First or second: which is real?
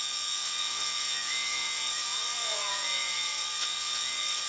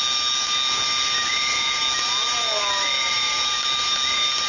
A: second